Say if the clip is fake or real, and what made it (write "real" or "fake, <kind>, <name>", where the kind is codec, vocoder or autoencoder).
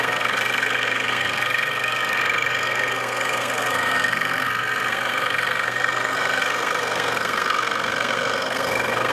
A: fake, codec, SNAC